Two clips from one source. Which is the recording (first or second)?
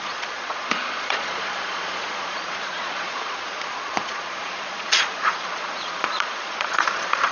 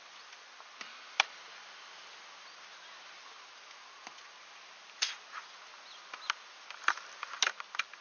second